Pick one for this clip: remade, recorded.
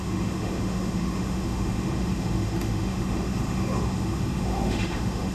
remade